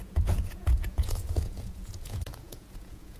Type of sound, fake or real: fake